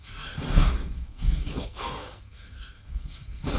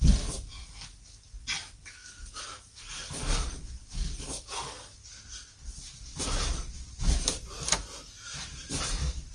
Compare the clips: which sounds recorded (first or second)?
second